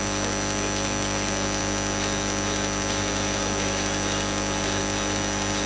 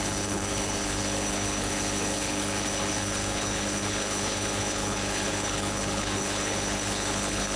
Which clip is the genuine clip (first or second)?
first